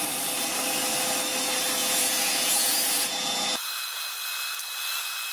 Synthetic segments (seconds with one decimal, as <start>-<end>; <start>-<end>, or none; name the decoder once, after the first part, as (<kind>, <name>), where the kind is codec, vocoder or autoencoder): 1.8-3.5 (vocoder, Vocos)